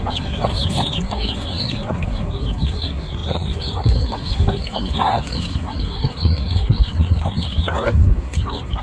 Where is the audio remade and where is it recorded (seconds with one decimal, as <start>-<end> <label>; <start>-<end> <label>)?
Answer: 0.0-8.8 remade